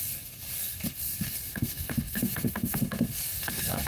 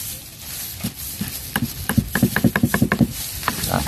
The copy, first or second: first